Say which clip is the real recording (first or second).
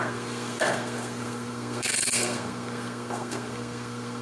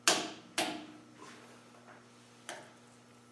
second